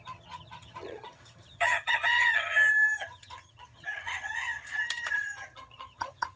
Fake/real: fake